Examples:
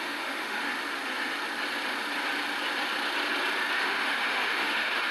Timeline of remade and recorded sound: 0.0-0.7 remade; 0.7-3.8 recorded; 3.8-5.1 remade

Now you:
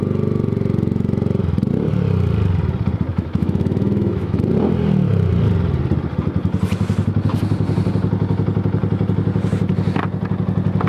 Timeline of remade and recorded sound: 0.0-3.1 recorded; 3.1-4.4 remade; 4.4-10.9 recorded